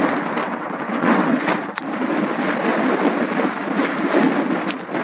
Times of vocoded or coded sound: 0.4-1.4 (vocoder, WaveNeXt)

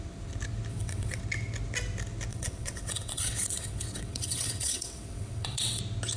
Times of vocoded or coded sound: 0.7-1.2 (vocoder, WaveNeXt); 2.3-5.8

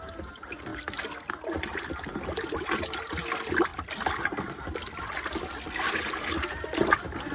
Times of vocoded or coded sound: none